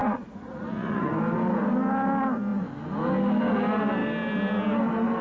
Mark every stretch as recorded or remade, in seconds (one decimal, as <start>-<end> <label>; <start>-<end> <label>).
0.0-1.1 remade; 1.1-5.2 recorded